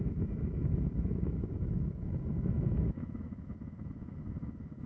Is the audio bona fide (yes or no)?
no